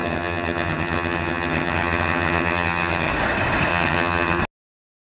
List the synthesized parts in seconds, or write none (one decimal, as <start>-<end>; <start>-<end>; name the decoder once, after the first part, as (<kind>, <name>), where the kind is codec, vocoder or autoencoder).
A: 0.0-3.1 (vocoder, HiFi-GAN); 3.7-4.4